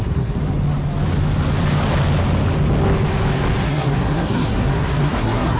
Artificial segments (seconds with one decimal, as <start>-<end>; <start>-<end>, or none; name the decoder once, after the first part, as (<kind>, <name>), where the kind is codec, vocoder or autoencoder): 0.0-0.4 (codec, SNAC); 3.6-5.6